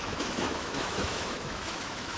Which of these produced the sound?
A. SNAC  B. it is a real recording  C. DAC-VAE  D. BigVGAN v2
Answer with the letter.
C